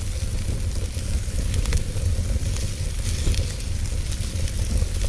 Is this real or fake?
real